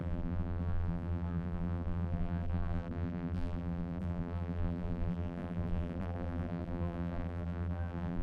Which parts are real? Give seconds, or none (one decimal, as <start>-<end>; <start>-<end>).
none